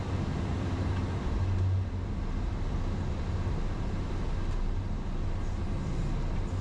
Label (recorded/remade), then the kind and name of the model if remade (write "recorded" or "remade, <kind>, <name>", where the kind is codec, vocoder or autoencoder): recorded